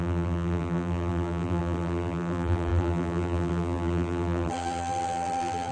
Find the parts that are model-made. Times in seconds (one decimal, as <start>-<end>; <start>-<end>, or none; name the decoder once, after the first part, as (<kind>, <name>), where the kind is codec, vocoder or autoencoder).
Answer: 0.0-5.7 (vocoder, BigVGAN v2)